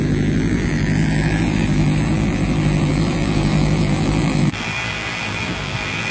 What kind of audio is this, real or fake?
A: fake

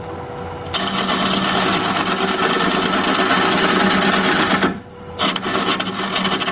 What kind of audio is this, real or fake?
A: real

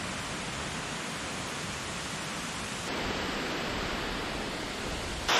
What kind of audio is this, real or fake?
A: real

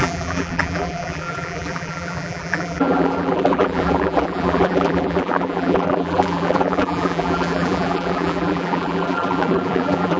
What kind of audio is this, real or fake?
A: fake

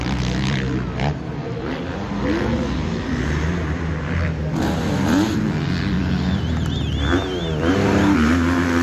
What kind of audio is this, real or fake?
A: real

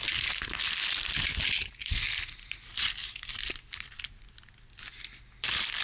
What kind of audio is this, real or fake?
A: real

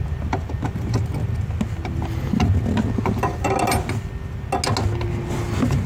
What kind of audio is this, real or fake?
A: real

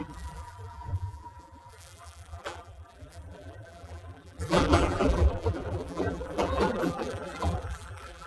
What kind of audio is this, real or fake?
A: fake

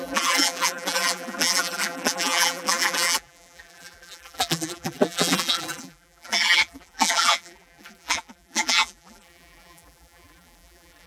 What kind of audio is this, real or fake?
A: fake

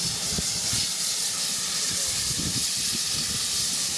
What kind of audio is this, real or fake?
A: real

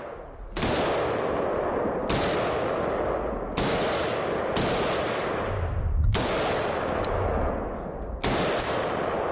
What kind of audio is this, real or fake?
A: real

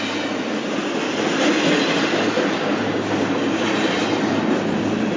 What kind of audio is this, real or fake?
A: real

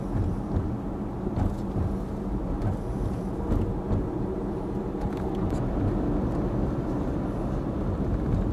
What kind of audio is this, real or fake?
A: real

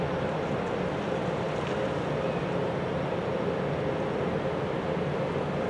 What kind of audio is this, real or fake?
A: real